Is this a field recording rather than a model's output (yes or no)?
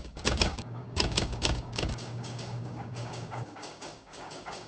no